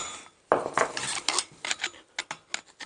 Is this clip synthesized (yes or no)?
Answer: no